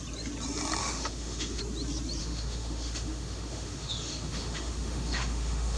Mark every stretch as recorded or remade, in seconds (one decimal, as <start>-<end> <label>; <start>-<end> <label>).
0.0-0.8 recorded; 0.8-1.6 remade; 1.6-2.2 recorded; 2.2-5.8 remade